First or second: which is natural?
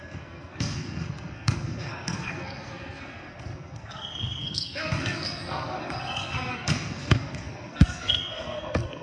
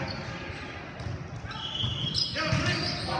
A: second